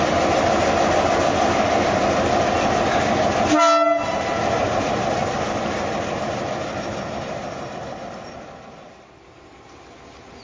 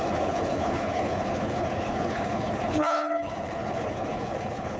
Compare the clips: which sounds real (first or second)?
first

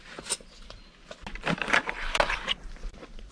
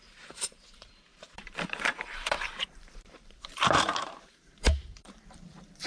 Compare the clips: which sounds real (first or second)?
first